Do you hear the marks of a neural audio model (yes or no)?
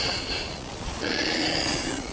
yes